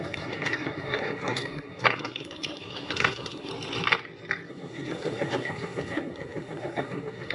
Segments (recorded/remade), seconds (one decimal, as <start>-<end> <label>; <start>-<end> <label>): 0.0-3.5 remade; 3.5-4.5 recorded; 4.5-7.3 remade